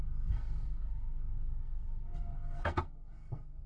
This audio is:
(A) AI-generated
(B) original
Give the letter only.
A